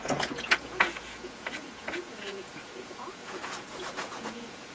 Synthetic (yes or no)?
yes